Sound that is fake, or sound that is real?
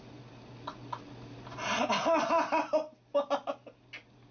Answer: real